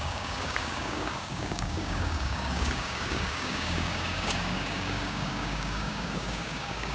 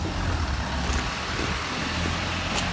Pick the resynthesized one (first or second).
first